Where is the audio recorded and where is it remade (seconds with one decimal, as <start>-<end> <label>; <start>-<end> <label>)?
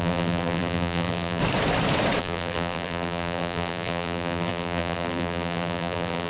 0.0-1.4 remade; 1.4-2.2 recorded; 2.2-6.3 remade